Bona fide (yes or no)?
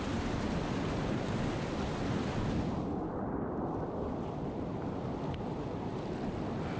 yes